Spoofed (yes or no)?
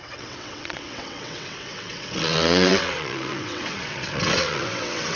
yes